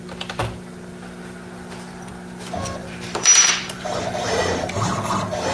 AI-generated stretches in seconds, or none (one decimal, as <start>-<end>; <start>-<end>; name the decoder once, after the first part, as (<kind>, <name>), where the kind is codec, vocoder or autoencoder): 2.8-4.7 (vocoder, BigVGAN v2)